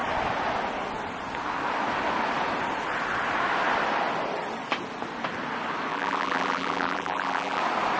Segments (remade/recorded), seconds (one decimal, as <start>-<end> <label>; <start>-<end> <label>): 0.0-5.9 recorded; 5.9-7.6 remade; 7.6-8.0 recorded